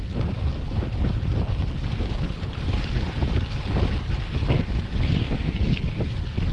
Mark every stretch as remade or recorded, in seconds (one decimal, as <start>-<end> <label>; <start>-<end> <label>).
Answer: 0.0-5.2 recorded; 5.2-5.8 remade; 5.8-6.5 recorded